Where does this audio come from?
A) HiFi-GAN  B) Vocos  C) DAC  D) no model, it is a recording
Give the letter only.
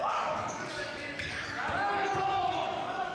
C